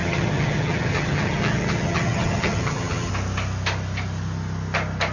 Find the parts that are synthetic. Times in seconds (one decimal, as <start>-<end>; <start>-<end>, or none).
0.0-3.1